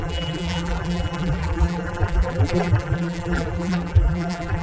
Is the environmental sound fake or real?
fake